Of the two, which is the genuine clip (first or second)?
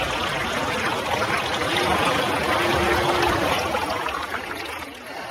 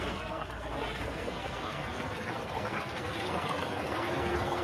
first